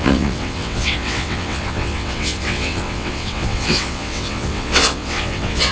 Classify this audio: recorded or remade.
remade